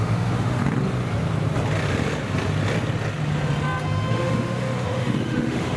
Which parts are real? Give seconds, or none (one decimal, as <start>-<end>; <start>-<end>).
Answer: 0.6-4.1